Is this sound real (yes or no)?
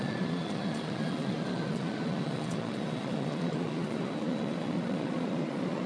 no